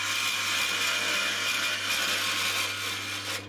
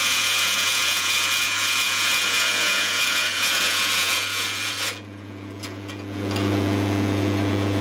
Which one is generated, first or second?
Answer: second